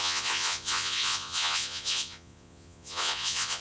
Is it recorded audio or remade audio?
remade